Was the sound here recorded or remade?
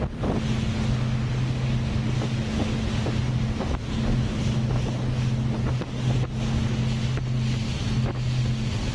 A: recorded